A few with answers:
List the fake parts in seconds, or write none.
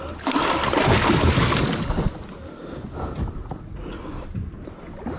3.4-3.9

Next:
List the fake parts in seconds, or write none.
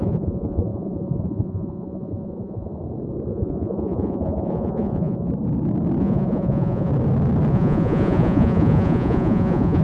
0.0-2.7; 3.3-5.3; 6.0-6.9; 7.5-9.8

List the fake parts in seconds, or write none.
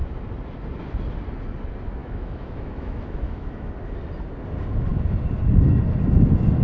2.0-3.7